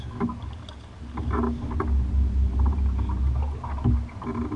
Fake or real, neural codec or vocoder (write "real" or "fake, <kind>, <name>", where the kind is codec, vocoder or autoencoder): real